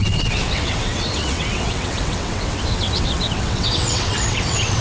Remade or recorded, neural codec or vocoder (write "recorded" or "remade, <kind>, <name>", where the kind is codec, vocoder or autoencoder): remade, vocoder, WaveNeXt